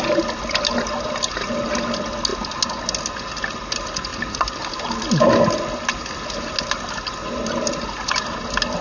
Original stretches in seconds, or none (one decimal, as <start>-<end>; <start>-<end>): 0.0-8.8